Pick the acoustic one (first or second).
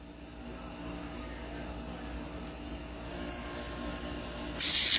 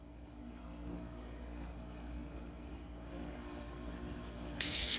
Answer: first